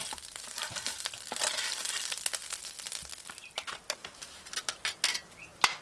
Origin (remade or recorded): recorded